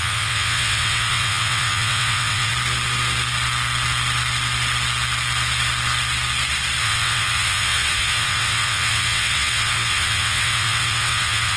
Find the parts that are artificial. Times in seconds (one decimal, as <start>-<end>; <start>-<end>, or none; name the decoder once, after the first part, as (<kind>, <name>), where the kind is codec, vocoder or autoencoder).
0.0-2.5 (vocoder, WaveNeXt); 6.8-11.6

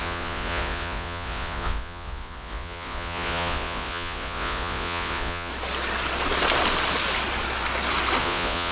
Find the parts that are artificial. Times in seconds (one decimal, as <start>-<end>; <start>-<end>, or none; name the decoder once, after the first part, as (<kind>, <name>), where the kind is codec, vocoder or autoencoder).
0.0-5.5 (vocoder, Vocos); 8.2-8.7

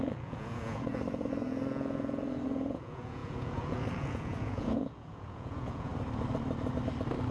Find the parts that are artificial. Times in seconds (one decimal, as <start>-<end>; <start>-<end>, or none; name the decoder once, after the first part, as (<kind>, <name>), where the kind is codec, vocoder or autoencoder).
0.0-0.9 (vocoder, Vocos); 2.5-5.9